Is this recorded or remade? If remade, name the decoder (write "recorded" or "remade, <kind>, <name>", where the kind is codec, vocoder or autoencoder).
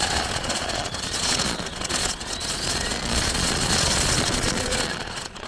remade, vocoder, Vocos